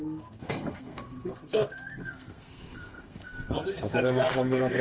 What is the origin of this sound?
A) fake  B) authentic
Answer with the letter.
A